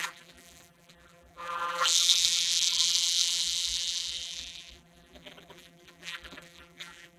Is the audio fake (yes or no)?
yes